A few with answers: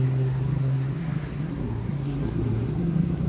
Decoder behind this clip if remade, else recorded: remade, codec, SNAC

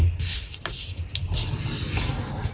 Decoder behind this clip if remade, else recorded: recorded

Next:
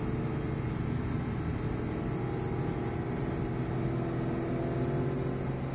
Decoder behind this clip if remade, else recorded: recorded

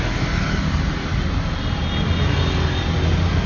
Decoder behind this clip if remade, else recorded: recorded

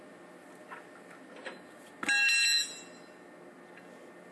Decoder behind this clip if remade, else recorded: recorded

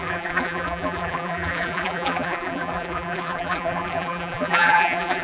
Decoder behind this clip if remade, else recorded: remade, vocoder, BigVGAN v2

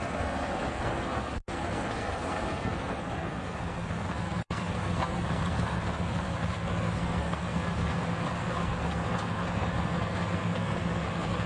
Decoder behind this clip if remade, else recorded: remade, codec, SNAC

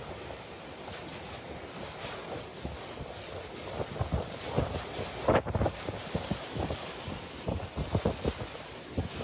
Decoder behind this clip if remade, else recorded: recorded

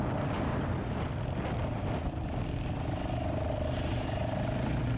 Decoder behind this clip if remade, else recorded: recorded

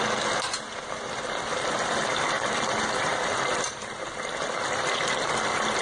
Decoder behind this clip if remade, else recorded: recorded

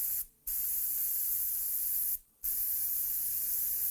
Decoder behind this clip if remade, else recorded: remade, vocoder, Vocos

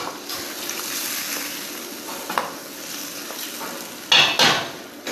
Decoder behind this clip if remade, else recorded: recorded